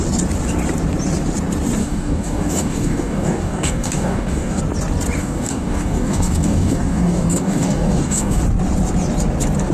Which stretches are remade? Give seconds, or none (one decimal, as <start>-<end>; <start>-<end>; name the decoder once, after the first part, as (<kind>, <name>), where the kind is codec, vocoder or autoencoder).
1.8-4.6 (codec, DAC); 5.2-8.4